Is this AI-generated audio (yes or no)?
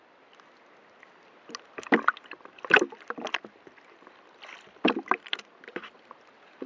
no